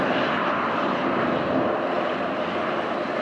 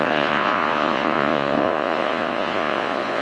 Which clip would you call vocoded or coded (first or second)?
second